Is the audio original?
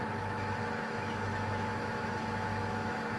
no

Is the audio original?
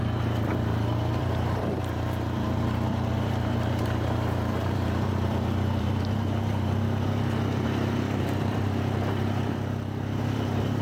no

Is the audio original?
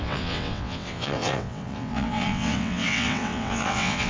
no